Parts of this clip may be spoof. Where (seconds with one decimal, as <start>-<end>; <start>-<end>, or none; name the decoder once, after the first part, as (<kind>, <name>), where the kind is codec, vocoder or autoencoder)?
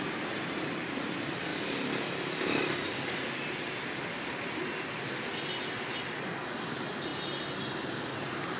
1.5-4.9 (vocoder, BigVGAN v2)